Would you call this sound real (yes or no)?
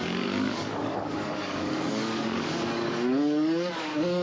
no